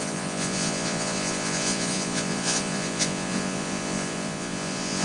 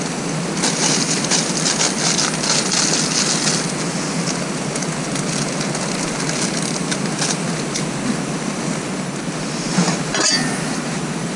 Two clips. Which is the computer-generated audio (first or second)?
first